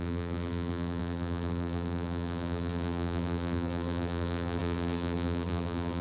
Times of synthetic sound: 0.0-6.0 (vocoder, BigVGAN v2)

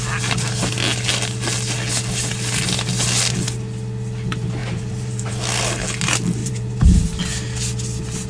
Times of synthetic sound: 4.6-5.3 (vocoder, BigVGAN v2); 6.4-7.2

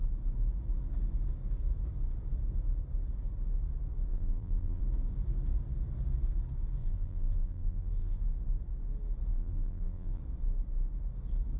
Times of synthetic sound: 4.1-4.8 (vocoder, BigVGAN v2); 6.8-8.2; 9.3-10.2

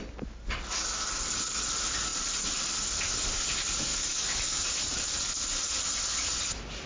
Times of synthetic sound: 3.9-4.6 (codec, DAC)

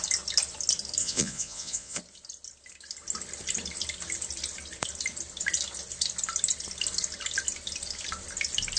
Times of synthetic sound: 1.0-2.0 (vocoder, Vocos)

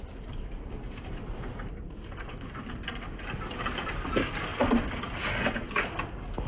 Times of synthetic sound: 4.5-5.0 (vocoder, BigVGAN v2)